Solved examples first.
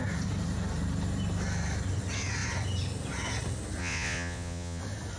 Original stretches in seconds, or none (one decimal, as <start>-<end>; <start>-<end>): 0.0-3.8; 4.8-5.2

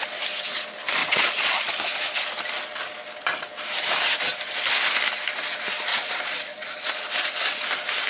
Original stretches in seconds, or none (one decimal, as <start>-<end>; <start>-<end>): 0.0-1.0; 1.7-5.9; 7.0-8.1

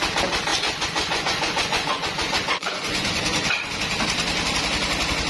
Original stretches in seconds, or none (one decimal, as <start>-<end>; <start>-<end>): 0.0-0.5; 3.7-5.3